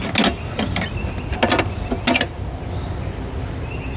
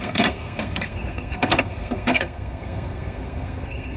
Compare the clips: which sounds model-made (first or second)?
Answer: second